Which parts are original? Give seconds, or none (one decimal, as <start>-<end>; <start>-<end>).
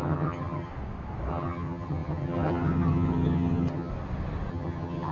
0.7-1.3; 3.9-4.5